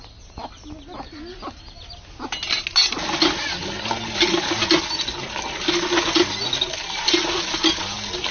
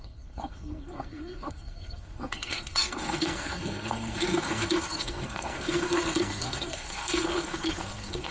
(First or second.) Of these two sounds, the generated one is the second